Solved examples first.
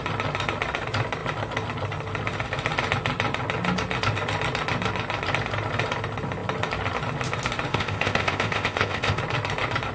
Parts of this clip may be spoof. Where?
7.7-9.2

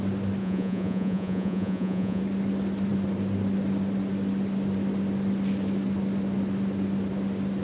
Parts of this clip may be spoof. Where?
0.4-2.2

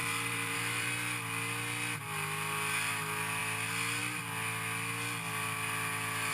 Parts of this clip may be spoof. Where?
0.0-0.9

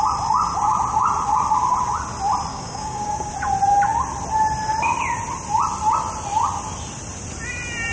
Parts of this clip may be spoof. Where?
2.5-3.3

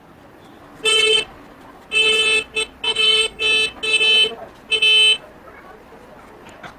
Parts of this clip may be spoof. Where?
2.9-3.4

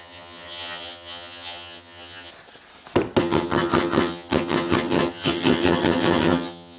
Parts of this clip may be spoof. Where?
0.0-2.3; 3.2-6.8

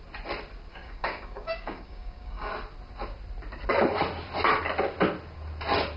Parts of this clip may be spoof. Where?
0.7-2.5

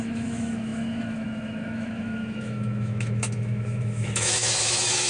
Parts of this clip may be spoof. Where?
0.0-5.1